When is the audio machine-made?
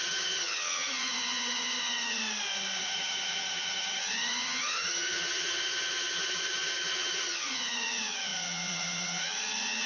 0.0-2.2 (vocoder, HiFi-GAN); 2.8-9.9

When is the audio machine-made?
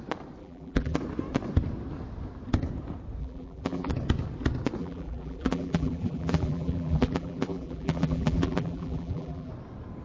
0.4-1.0 (vocoder, BigVGAN v2); 3.2-3.9; 4.8-9.5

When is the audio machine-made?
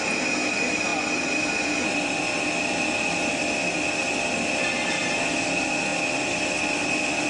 none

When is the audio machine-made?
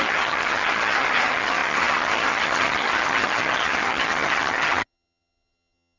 0.0-6.0 (vocoder, HiFi-GAN)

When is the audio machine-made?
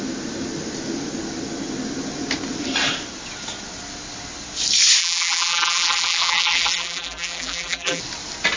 5.0-8.0 (vocoder, BigVGAN v2)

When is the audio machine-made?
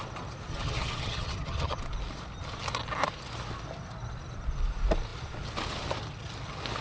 0.5-1.8 (vocoder, HiFi-GAN)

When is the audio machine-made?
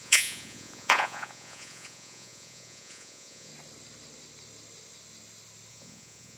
0.0-3.5 (vocoder, Vocos); 5.7-6.4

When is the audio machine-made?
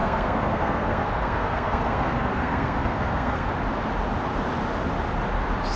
0.0-3.5 (codec, SNAC)